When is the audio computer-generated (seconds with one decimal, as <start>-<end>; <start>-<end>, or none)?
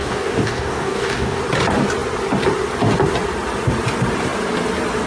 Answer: 0.0-1.4